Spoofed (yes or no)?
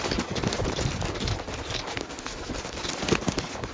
no